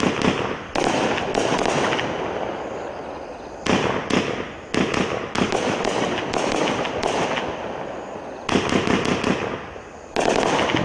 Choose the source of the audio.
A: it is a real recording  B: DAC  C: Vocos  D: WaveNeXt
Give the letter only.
A